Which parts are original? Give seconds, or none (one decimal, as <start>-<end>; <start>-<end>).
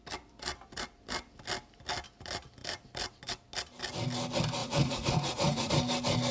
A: 0.0-4.6; 5.7-6.3